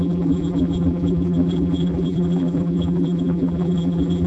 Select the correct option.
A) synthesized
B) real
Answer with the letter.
A